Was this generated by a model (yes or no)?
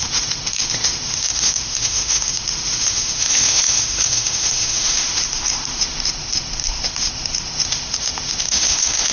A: yes